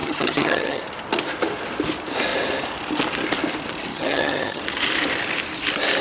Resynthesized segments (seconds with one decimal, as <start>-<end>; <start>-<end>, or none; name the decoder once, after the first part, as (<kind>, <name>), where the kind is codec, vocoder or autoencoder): 0.0-0.8 (vocoder, HiFi-GAN); 3.9-4.6